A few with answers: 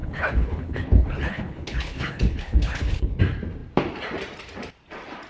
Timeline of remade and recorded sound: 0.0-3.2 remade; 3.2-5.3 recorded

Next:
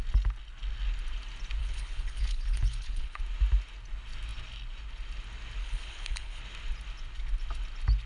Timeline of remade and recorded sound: 0.0-1.6 recorded; 1.6-3.2 remade; 3.2-5.6 recorded; 5.6-6.4 remade; 6.4-8.1 recorded